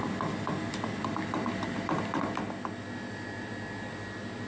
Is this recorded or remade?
recorded